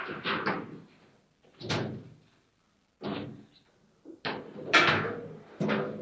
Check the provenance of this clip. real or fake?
real